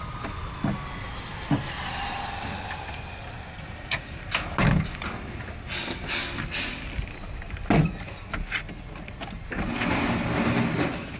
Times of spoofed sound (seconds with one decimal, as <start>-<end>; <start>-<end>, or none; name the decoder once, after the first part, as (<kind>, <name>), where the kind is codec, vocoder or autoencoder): none